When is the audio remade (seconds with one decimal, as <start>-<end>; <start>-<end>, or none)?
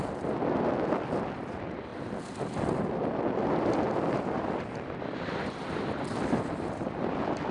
0.0-1.9; 2.8-7.5